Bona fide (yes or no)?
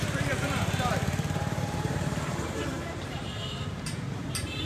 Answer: no